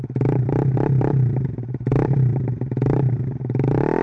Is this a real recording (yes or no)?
yes